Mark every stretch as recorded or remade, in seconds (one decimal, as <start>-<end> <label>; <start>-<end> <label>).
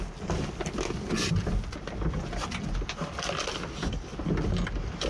0.0-5.1 recorded